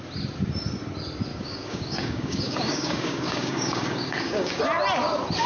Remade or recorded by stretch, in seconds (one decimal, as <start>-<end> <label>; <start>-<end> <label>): 0.0-1.3 recorded; 1.3-4.6 remade; 4.6-5.5 recorded